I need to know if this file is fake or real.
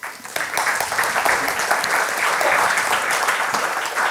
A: real